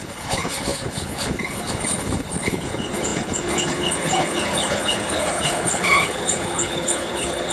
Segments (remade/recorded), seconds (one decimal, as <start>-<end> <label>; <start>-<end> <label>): 0.0-7.5 remade